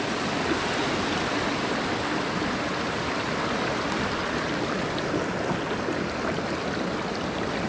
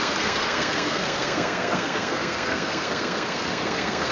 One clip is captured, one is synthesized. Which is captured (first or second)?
first